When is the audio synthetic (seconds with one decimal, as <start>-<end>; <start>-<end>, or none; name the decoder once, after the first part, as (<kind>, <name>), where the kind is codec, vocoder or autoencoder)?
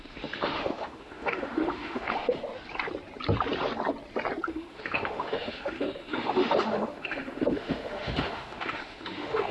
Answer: 0.0-2.4 (autoencoder, DAC-VAE); 4.5-9.5